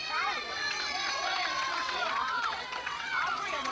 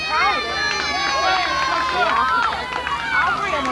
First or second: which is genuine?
second